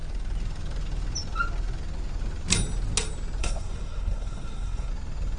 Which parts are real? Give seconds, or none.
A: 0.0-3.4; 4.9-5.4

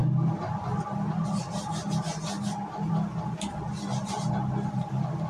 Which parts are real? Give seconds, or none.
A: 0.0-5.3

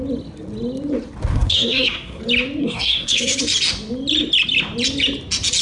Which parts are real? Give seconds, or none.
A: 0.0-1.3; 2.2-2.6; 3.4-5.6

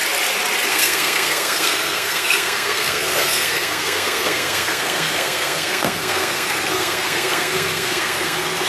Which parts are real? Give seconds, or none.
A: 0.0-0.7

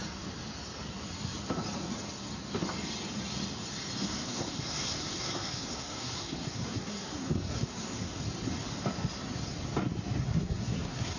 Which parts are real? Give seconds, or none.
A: 0.0-4.0; 8.2-10.2

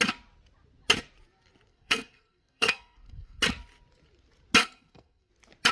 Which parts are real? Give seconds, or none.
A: 0.0-1.7; 3.4-4.6; 5.3-5.7

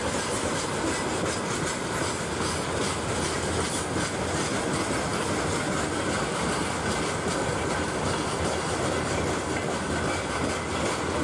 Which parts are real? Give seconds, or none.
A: 0.0-11.2